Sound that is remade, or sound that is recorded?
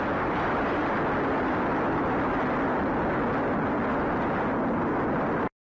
recorded